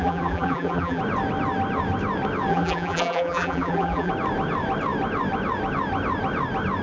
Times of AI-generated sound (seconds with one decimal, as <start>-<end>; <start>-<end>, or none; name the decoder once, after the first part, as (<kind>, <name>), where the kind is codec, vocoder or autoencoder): 0.0-1.0 (vocoder, BigVGAN v2); 2.5-4.1